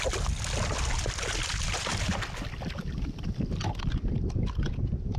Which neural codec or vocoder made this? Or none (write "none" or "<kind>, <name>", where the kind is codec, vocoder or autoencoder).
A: none